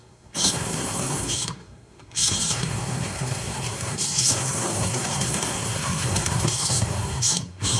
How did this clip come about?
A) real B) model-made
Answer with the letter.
B